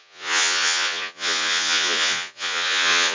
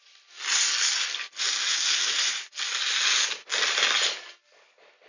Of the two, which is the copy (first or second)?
first